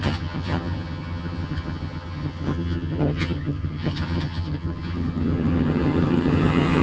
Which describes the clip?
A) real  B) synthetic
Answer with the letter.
B